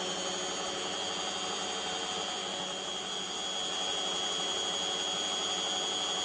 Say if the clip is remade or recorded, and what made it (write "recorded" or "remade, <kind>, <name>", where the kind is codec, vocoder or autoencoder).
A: recorded